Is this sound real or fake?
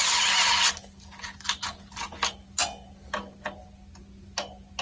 real